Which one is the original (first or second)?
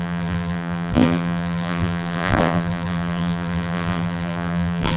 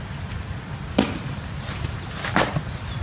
second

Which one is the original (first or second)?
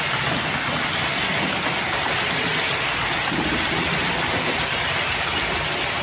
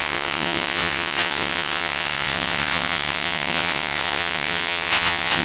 first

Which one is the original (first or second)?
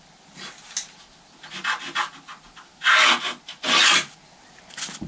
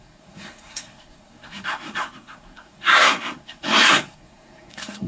first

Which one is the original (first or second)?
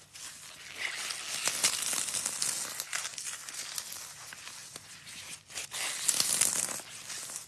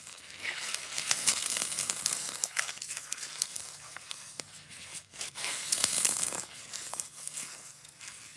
first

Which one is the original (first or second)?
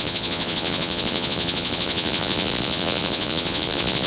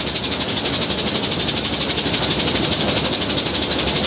second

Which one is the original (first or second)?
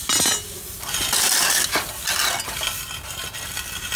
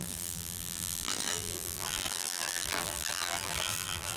first